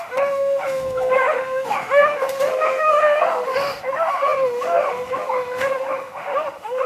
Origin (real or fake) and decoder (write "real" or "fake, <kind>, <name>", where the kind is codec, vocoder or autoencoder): fake, autoencoder, DAC-VAE